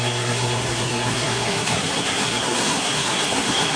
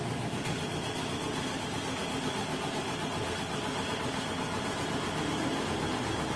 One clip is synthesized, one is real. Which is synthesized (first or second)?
first